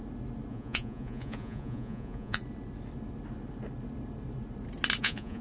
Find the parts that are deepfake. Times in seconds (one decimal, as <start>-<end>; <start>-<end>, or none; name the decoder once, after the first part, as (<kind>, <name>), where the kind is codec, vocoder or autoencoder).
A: 0.5-2.4 (vocoder, Vocos); 5.0-5.4